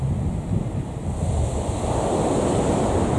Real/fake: real